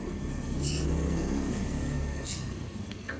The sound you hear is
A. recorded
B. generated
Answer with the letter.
B